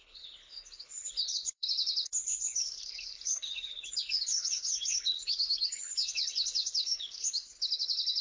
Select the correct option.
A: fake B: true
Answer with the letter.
A